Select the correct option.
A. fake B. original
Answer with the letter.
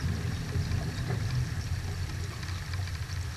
B